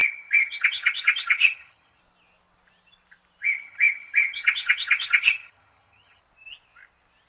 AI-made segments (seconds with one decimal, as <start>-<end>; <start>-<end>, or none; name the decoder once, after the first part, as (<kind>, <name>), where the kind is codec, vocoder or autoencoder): 0.0-2.0 (vocoder, HiFi-GAN); 3.4-6.2

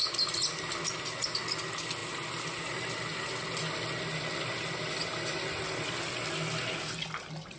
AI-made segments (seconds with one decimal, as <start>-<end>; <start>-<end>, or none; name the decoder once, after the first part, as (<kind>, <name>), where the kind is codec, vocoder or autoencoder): none

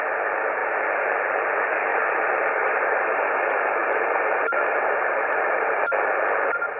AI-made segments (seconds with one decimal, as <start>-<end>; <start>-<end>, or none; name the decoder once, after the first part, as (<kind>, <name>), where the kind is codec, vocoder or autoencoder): 1.9-3.2 (vocoder, BigVGAN v2); 3.8-5.8

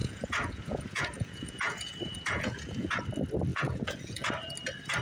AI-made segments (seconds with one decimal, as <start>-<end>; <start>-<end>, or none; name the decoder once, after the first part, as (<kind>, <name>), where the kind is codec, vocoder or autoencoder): 0.0-3.0 (vocoder, Vocos); 3.5-4.3

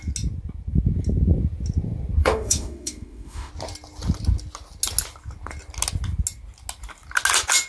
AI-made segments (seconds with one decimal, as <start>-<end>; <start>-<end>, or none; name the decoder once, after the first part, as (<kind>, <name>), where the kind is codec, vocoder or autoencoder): 2.2-3.5 (autoencoder, DAC-VAE)

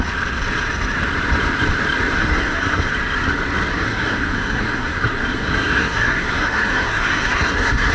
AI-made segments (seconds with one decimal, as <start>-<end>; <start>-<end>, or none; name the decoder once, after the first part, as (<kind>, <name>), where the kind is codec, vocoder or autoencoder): 2.2-2.9 (codec, SNAC); 3.7-7.9

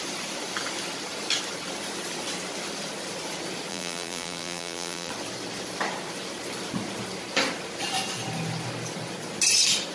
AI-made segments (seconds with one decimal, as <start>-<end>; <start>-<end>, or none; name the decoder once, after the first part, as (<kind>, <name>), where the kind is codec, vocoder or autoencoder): 3.7-5.1 (vocoder, BigVGAN v2)

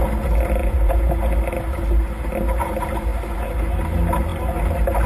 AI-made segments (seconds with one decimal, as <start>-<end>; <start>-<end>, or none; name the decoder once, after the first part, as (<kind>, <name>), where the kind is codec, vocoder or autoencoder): 0.6-1.1 (vocoder, Vocos)